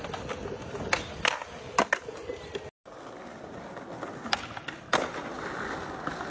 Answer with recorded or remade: recorded